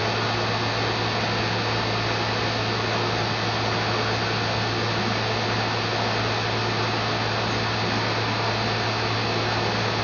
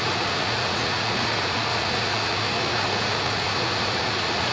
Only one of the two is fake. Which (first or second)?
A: second